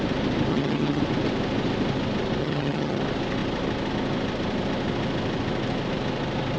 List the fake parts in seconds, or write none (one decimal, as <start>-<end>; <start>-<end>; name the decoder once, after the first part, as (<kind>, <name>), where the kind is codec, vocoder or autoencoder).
0.5-1.0 (vocoder, HiFi-GAN); 2.4-3.0